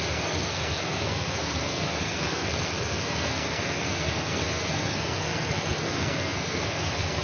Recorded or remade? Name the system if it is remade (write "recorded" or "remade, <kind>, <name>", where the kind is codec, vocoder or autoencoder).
remade, codec, SNAC